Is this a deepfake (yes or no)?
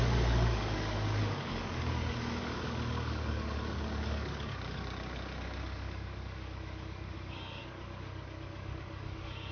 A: yes